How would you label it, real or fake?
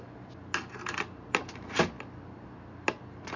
real